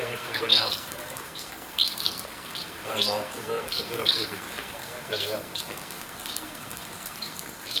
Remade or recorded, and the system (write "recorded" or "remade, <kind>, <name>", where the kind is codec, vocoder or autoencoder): remade, codec, SNAC